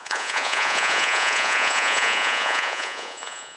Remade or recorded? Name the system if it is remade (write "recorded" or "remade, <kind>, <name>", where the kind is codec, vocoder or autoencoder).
remade, vocoder, Vocos